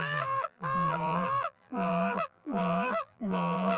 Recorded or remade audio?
remade